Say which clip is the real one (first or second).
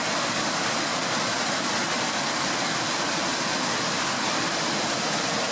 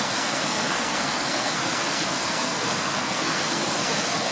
first